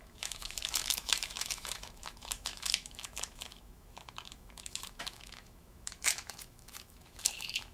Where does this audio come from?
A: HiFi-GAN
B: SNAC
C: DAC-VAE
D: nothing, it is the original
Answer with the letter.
C